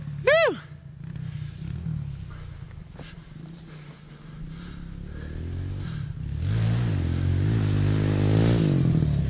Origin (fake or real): real